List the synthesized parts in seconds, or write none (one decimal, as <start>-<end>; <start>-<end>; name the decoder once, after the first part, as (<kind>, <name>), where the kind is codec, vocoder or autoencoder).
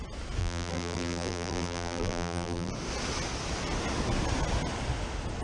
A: 0.4-2.7 (vocoder, BigVGAN v2)